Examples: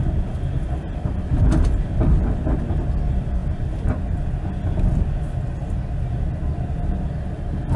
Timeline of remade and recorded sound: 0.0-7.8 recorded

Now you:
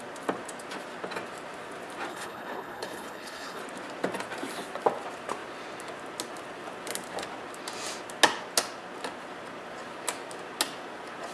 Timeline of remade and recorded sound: 0.0-2.1 recorded; 2.1-3.6 remade; 3.6-11.3 recorded

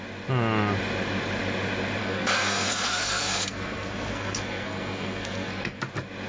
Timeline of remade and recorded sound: 0.0-2.0 recorded; 2.0-5.8 remade; 5.8-6.3 recorded